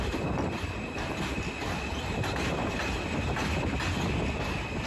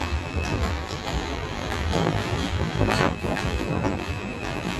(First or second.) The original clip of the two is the first